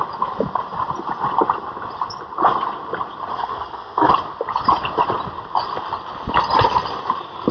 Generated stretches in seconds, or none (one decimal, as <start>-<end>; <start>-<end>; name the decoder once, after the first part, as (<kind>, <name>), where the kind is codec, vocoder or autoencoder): 3.3-4.1 (codec, SNAC)